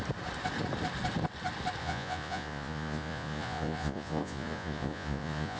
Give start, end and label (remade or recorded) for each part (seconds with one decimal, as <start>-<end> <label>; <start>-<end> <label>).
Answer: 0.0-1.8 recorded; 1.8-5.6 remade